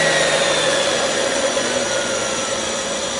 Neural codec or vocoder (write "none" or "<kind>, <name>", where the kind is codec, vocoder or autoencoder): vocoder, Vocos